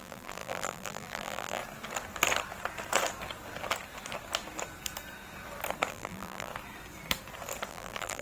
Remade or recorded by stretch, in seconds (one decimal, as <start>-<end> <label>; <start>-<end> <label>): 0.0-1.6 remade; 1.6-5.9 recorded; 5.9-6.5 remade; 6.5-7.7 recorded; 7.7-8.2 remade